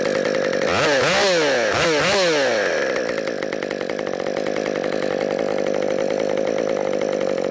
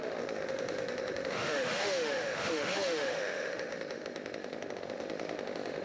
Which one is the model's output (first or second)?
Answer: second